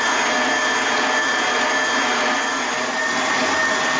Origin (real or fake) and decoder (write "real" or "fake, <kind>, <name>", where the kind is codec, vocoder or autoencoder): real